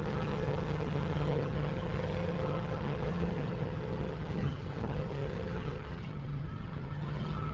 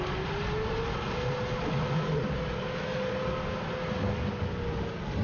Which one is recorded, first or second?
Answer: second